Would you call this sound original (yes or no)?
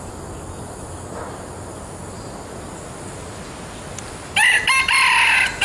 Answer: yes